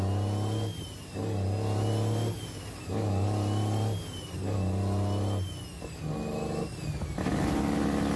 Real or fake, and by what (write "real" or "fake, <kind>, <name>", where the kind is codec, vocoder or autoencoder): real